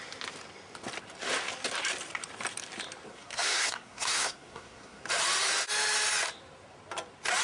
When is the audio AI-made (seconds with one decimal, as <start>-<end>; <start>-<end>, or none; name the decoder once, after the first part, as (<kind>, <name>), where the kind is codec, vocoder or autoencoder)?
3.1-5.0 (codec, SNAC)